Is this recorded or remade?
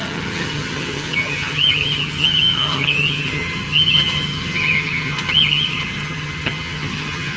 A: remade